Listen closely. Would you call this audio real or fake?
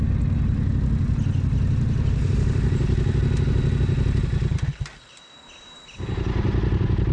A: real